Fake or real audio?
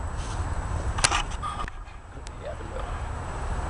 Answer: real